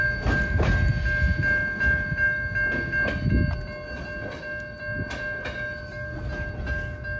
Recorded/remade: recorded